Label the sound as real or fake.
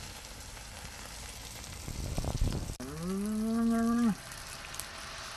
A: real